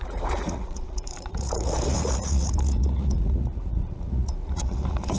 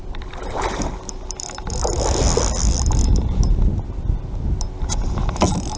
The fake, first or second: first